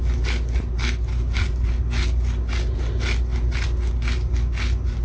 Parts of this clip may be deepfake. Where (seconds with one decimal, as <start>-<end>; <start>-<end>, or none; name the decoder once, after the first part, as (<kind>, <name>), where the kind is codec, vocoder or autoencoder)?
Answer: none